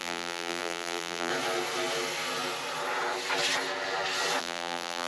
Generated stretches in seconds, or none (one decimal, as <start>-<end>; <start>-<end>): 0.0-1.3; 4.4-5.1